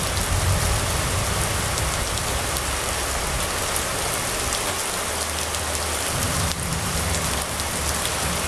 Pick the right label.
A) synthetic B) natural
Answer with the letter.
B